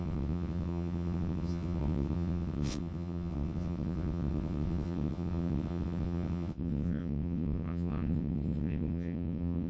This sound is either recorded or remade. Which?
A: remade